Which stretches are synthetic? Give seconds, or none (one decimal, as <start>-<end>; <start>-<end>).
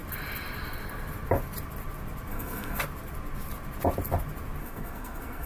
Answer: 2.3-2.8; 4.6-5.5